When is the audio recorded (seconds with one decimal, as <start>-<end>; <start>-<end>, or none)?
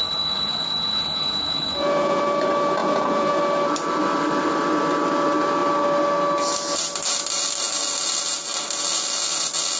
2.2-2.8; 3.4-9.8